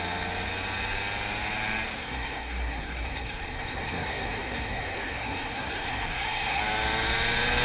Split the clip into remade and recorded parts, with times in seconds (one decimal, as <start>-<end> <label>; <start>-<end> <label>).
0.0-2.0 recorded; 2.0-6.6 remade; 6.6-7.6 recorded